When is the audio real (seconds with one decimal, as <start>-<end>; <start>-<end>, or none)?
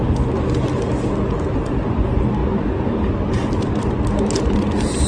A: 0.0-5.1